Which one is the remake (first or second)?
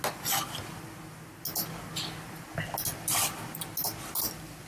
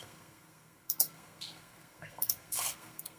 second